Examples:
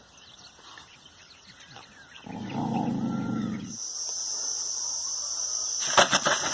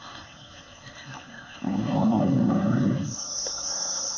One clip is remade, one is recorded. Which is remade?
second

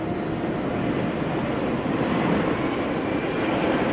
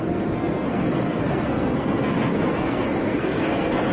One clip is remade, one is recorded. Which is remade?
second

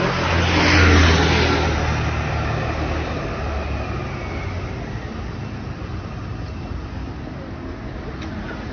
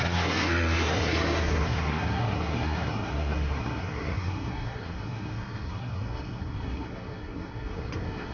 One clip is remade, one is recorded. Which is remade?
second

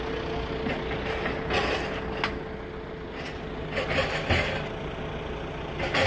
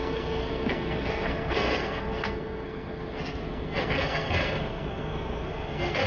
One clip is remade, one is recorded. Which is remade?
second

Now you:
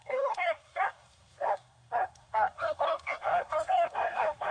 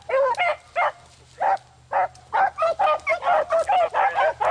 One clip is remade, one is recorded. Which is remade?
first